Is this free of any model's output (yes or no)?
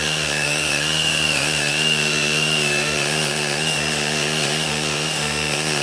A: no